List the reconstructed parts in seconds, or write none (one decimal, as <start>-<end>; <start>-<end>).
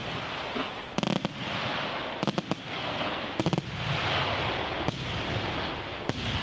2.6-3.2